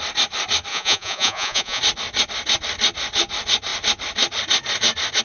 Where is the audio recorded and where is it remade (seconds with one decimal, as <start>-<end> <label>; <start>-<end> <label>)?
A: 0.0-0.7 recorded; 0.7-1.8 remade; 1.8-5.2 recorded